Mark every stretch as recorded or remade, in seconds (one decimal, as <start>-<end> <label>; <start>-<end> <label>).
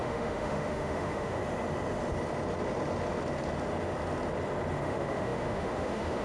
0.0-1.4 remade; 1.4-4.8 recorded; 4.8-6.2 remade